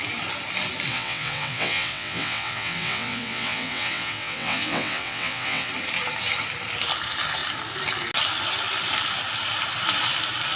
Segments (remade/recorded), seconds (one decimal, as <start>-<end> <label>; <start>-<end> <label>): 0.0-0.9 recorded; 0.9-5.7 remade; 5.7-10.6 recorded